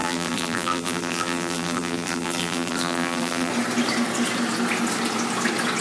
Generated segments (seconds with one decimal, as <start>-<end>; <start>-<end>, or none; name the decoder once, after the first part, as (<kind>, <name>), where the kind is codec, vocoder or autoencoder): 0.0-3.5 (vocoder, BigVGAN v2)